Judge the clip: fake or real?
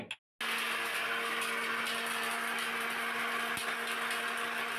real